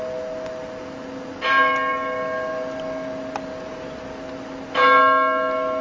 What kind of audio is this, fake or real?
real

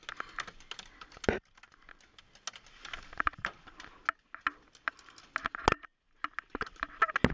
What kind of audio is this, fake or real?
real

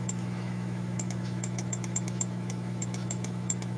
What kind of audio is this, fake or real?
fake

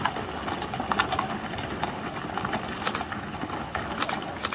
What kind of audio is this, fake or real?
real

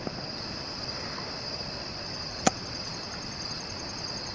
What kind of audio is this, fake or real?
real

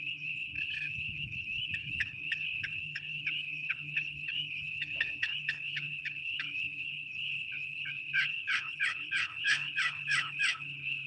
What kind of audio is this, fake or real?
fake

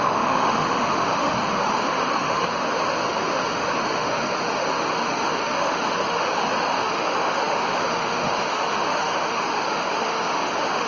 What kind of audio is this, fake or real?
fake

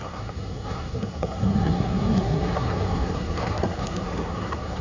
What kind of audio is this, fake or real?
fake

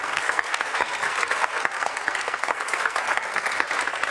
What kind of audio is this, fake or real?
fake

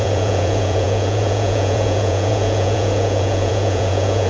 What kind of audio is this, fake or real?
fake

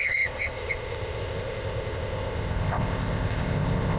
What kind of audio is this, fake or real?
fake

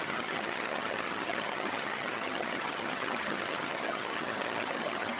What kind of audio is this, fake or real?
fake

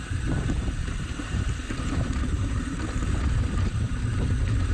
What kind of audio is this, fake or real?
fake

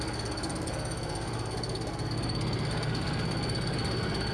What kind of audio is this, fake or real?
fake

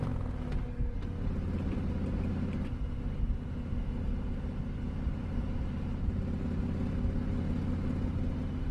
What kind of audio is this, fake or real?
real